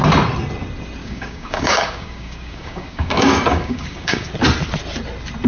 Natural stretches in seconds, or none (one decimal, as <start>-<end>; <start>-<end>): 0.0-1.0; 4.3-5.5

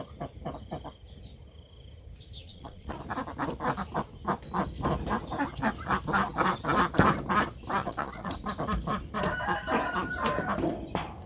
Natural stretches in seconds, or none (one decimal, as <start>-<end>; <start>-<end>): 0.0-2.4; 3.0-7.8; 8.3-11.3